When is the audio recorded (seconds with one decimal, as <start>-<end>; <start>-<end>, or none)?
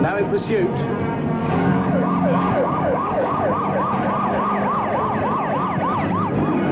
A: 0.0-1.4; 3.4-6.7